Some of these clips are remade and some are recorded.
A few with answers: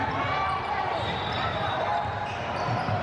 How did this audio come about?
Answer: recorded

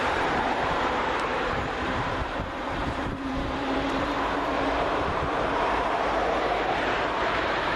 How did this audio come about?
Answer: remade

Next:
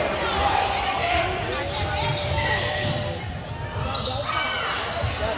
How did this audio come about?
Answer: recorded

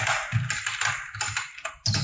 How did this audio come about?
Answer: recorded